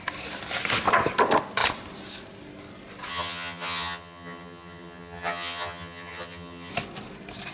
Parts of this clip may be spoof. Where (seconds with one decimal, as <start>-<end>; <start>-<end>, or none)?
3.1-6.7